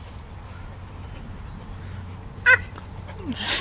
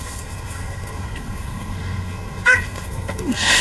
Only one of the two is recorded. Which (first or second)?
first